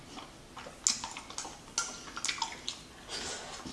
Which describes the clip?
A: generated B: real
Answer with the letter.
B